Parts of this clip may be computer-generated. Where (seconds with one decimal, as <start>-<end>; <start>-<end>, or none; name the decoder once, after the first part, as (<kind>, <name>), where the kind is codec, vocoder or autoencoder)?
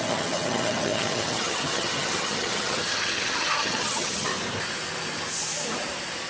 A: 0.0-4.3 (vocoder, HiFi-GAN)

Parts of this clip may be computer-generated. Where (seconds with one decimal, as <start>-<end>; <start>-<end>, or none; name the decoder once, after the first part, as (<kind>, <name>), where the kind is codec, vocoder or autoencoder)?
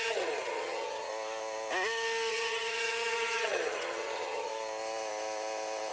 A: 0.0-1.1 (vocoder, HiFi-GAN); 2.3-4.5